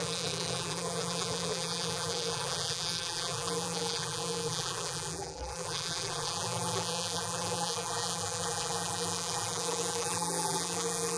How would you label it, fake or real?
fake